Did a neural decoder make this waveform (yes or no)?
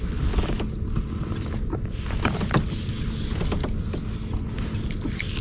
no